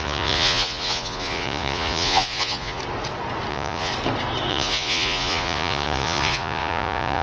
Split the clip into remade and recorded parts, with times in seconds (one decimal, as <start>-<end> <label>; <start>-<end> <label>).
0.0-2.8 remade; 2.8-3.5 recorded; 3.5-3.9 remade; 3.9-4.5 recorded; 4.5-7.2 remade